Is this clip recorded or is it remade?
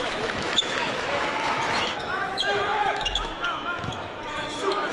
remade